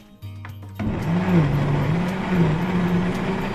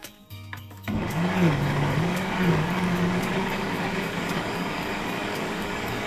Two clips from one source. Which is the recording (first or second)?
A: first